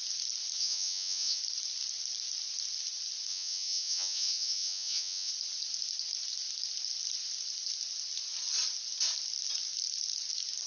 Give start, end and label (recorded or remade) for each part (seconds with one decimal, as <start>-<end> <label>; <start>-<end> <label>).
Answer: 0.0-0.6 recorded; 0.6-1.4 remade; 1.4-3.3 recorded; 3.3-5.3 remade; 5.3-10.7 recorded